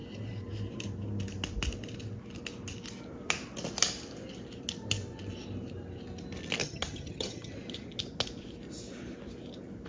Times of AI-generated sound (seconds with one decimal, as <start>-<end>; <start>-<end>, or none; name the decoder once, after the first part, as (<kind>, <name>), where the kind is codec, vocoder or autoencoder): 6.6-7.5 (vocoder, HiFi-GAN)